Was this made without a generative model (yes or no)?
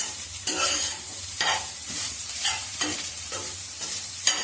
no